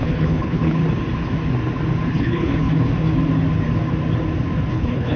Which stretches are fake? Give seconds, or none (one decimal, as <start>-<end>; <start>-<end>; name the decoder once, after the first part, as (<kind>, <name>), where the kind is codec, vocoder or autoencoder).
0.0-0.8 (codec, HILCodec); 2.1-2.9; 4.7-5.2